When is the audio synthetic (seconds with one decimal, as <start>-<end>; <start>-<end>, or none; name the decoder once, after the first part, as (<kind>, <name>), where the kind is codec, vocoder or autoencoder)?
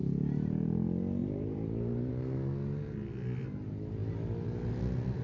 1.2-2.1 (vocoder, BigVGAN v2)